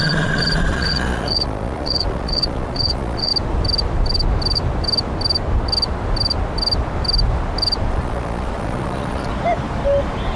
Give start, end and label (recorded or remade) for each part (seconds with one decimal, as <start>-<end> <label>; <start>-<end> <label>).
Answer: 0.0-3.3 remade; 3.3-7.9 recorded; 7.9-9.3 remade; 9.3-10.4 recorded